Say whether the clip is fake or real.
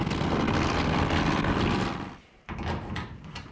real